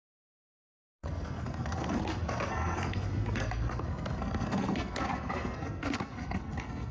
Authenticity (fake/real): fake